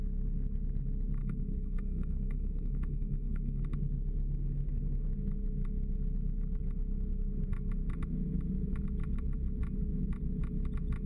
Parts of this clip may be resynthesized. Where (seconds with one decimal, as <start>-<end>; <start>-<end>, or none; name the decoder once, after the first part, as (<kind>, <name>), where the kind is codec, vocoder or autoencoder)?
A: 1.2-3.6 (codec, SNAC)